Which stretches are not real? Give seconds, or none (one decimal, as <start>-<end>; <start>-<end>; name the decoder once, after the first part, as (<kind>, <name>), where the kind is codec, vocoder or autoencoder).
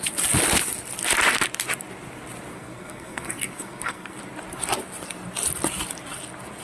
2.5-4.2 (codec, SNAC)